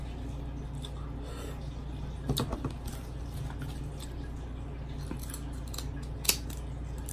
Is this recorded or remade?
recorded